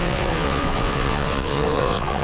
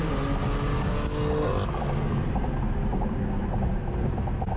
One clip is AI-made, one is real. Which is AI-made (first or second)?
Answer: first